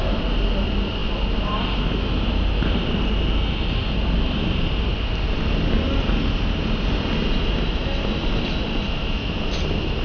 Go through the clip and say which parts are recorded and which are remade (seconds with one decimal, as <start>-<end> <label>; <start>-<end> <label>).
0.0-10.0 recorded